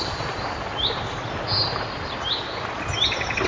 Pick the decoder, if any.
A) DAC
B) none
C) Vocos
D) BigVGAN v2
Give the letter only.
B